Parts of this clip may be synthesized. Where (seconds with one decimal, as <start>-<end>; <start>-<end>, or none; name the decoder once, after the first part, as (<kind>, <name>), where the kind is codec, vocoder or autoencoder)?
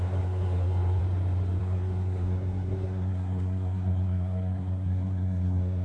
0.0-1.0 (codec, SNAC); 1.6-5.8